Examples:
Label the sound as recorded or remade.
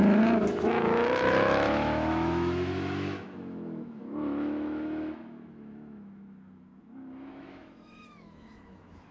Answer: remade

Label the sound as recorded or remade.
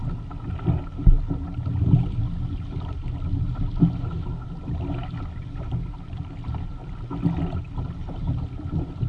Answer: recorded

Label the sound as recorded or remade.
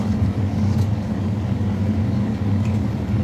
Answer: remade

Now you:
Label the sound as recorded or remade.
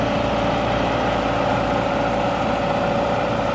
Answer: recorded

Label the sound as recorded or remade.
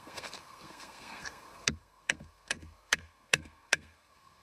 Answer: remade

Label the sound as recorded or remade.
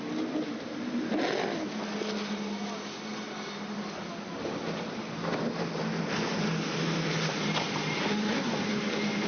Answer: recorded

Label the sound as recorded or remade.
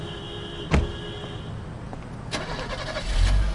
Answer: recorded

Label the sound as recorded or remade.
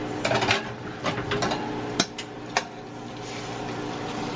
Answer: recorded